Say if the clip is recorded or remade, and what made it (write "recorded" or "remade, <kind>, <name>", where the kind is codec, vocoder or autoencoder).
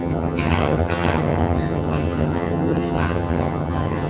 remade, vocoder, HiFi-GAN